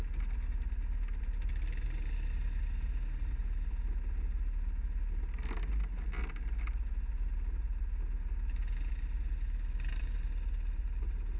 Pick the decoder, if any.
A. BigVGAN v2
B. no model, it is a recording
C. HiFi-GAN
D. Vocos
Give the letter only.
B